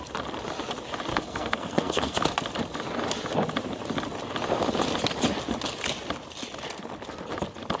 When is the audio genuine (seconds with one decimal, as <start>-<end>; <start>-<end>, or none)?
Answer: 0.0-1.1; 2.2-7.8